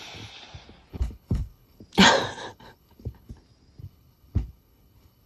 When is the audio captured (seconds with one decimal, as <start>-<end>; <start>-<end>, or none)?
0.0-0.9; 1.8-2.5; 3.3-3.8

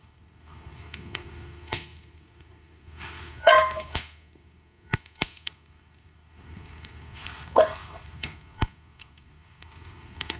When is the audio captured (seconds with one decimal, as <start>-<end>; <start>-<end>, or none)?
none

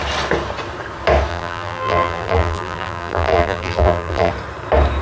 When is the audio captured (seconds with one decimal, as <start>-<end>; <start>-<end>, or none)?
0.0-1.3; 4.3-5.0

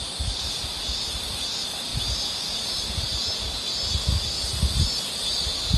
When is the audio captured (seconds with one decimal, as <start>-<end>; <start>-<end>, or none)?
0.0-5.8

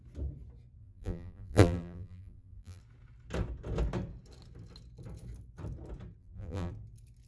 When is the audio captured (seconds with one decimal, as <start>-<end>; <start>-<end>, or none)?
0.0-0.8; 2.8-6.2; 6.7-7.3